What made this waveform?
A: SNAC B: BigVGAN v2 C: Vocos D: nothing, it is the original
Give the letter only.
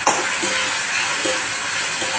D